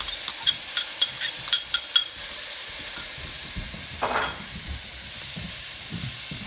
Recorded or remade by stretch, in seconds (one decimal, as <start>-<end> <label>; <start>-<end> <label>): 0.0-2.0 recorded; 2.0-5.9 remade; 5.9-6.5 recorded